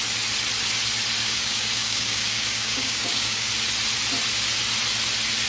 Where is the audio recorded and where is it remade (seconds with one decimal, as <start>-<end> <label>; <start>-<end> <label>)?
0.0-1.2 recorded; 1.2-3.5 remade; 3.5-5.5 recorded